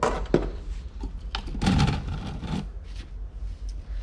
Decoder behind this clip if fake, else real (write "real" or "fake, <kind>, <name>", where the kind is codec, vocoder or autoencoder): real